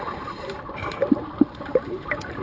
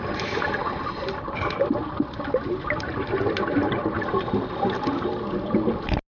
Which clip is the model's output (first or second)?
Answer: first